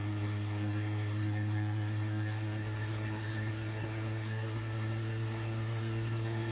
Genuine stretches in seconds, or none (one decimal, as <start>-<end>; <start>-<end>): none